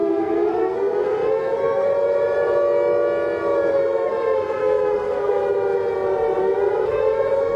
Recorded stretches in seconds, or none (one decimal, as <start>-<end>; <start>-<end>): 1.9-3.7; 5.4-6.4